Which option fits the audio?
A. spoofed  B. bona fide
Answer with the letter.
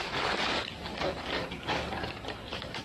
A